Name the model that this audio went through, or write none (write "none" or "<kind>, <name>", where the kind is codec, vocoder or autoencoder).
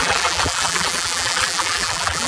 vocoder, BigVGAN v2